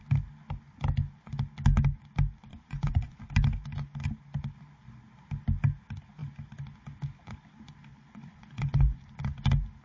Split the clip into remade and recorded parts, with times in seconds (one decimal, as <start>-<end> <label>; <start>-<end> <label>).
0.0-2.5 recorded; 2.5-3.2 remade; 3.2-7.9 recorded; 7.9-9.1 remade; 9.1-9.8 recorded